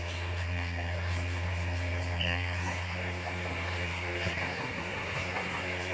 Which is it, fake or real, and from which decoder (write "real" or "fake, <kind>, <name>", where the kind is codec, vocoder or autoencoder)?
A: fake, codec, SNAC